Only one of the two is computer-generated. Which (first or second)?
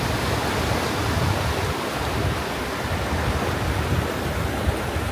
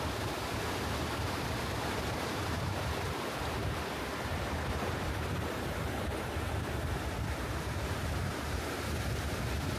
second